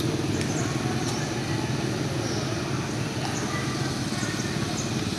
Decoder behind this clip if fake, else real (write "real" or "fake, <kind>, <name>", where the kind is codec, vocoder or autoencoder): real